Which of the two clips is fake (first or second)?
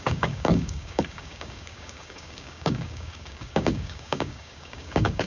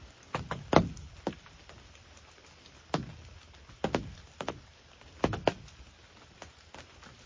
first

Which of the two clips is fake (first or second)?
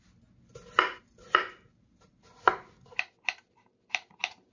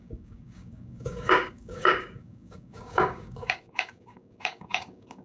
second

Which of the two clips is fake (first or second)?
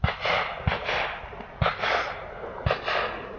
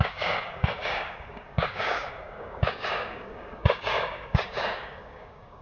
second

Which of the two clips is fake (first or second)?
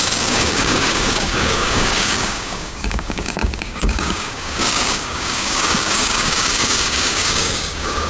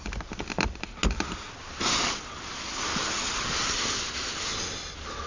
first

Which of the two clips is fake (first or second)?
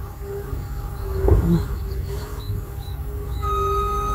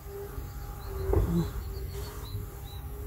first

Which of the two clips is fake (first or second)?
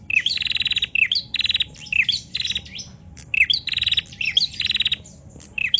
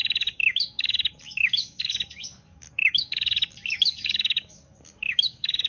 second